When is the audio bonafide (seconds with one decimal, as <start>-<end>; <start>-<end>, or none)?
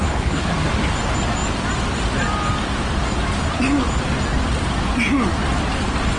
0.5-6.2